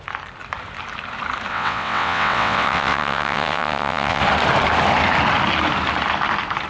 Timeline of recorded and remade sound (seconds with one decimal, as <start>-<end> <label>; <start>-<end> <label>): 0.0-1.5 recorded; 1.5-4.2 remade; 4.2-6.7 recorded